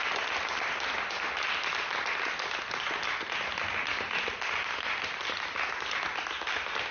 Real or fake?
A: real